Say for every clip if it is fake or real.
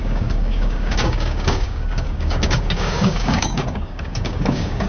fake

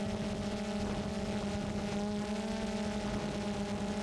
real